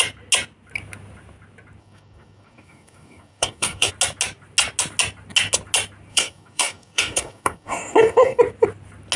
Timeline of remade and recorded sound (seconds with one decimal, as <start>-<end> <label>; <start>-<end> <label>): 0.0-1.8 recorded; 1.8-3.9 remade; 3.9-6.1 recorded; 6.1-8.4 remade; 8.4-9.2 recorded